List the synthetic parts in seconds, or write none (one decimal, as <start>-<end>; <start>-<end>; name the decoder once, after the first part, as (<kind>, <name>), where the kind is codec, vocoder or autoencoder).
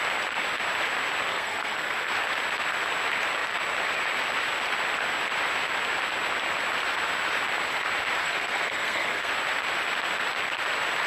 1.3-2.1 (codec, SNAC); 8.2-9.3